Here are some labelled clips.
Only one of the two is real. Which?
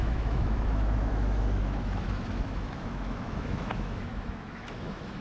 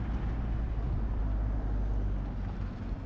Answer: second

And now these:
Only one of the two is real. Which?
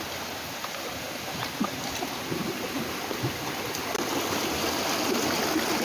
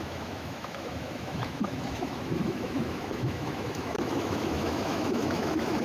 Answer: first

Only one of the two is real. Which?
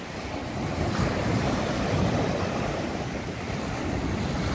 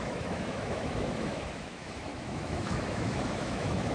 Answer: first